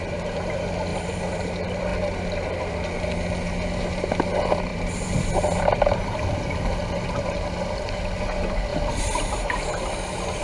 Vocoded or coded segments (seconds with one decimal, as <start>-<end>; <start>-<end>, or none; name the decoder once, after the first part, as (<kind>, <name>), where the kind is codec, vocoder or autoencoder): 0.9-1.5 (vocoder, BigVGAN v2); 4.7-6.3; 8.7-9.8